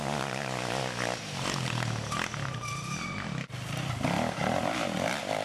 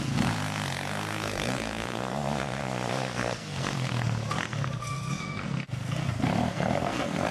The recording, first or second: first